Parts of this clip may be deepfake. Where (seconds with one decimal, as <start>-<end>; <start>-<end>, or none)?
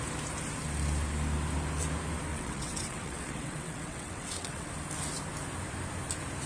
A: 2.3-4.7